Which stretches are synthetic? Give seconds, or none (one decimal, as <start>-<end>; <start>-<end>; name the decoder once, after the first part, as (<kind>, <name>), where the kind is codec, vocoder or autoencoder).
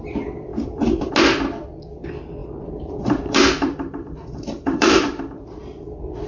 0.5-1.1 (vocoder, BigVGAN v2); 2.4-5.2